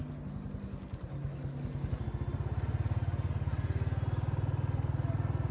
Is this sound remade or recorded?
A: recorded